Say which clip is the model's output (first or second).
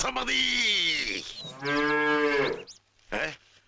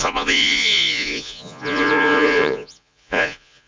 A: second